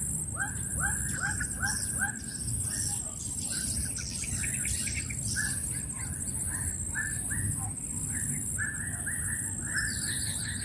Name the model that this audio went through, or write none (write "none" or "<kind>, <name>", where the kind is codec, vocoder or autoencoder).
none